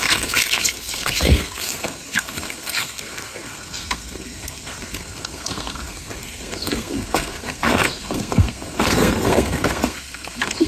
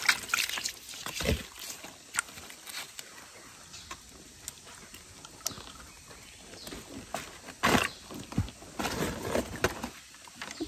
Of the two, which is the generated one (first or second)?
first